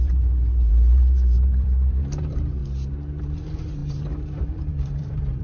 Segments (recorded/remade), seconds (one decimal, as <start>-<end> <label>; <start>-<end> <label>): 0.0-2.6 remade; 2.6-3.2 recorded; 3.2-5.4 remade